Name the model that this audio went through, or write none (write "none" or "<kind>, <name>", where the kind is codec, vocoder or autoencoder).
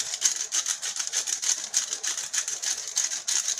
none